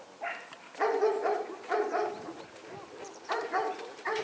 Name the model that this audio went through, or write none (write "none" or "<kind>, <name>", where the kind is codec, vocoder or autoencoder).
vocoder, BigVGAN v2